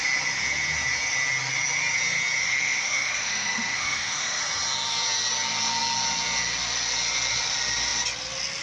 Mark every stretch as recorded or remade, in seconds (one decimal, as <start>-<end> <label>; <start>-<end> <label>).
0.0-2.4 recorded; 2.4-4.4 remade; 4.4-8.6 recorded